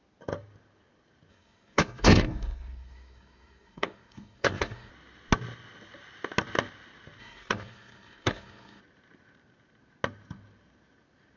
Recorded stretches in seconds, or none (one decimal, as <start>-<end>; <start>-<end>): 0.0-1.3; 4.9-7.2; 8.8-11.4